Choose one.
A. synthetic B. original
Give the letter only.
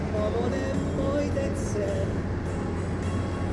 B